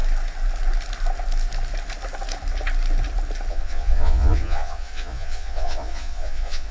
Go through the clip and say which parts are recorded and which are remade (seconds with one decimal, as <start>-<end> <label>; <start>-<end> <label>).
0.0-3.5 recorded; 3.5-6.7 remade